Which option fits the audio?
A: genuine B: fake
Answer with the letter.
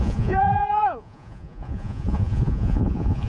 B